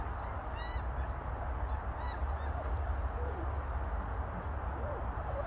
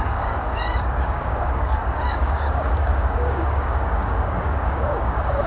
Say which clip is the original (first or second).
first